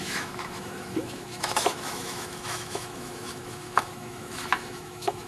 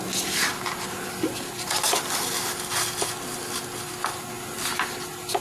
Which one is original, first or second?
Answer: second